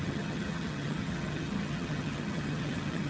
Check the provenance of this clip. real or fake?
fake